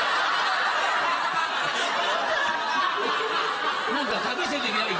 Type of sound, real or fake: real